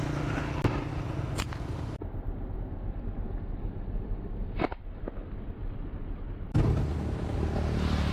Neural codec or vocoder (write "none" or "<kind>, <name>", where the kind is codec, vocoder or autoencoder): none